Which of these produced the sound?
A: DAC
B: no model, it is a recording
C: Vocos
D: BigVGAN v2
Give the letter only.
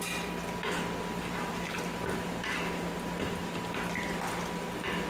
B